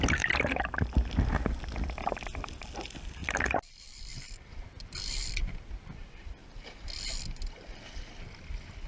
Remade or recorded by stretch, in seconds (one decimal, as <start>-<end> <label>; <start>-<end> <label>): 0.0-3.2 recorded; 3.2-4.8 remade; 4.8-8.9 recorded